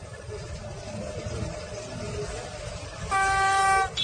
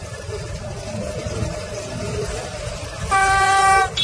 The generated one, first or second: second